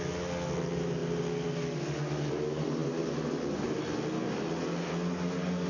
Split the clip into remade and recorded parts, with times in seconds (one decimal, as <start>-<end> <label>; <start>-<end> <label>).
0.0-5.7 recorded